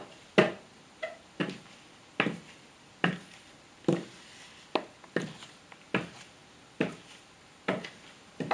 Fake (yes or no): no